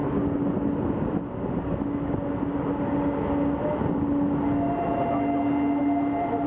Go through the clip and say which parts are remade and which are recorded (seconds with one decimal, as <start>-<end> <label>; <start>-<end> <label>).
0.0-6.5 recorded